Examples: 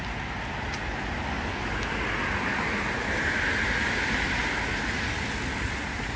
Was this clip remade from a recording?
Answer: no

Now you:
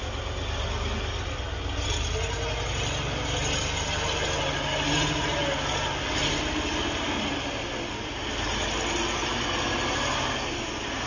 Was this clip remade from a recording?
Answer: no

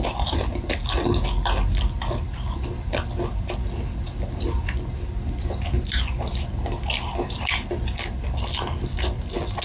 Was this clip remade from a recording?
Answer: no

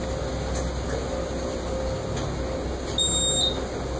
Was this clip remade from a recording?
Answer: no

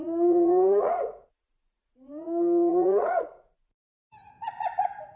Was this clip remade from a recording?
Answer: yes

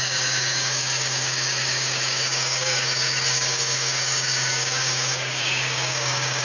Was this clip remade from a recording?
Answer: yes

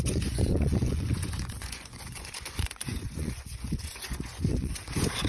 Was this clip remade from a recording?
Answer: yes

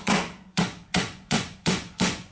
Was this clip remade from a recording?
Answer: yes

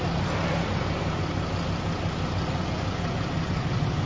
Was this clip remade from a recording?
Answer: no